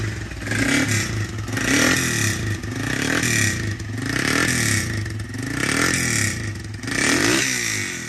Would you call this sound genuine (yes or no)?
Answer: yes